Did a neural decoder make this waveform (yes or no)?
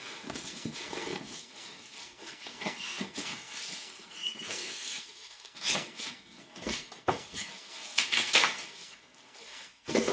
yes